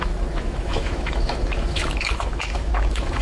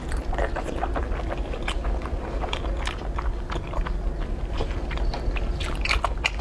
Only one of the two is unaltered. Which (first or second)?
second